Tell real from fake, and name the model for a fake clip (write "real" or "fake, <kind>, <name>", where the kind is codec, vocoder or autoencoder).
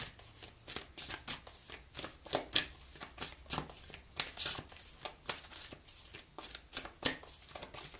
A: real